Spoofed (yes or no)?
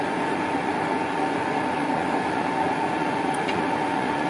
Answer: yes